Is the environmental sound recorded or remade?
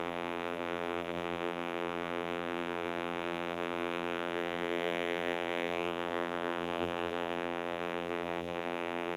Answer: remade